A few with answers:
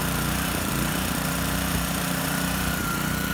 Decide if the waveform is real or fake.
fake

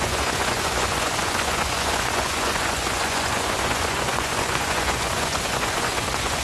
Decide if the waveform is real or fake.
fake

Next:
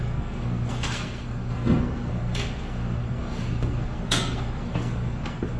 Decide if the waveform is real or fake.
fake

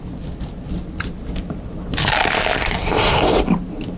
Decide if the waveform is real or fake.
real